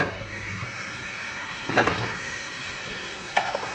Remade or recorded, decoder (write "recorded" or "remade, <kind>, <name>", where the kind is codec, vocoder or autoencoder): remade, codec, SNAC